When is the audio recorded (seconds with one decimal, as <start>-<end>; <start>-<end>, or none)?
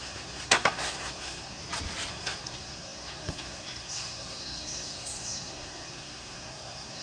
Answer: 1.6-2.1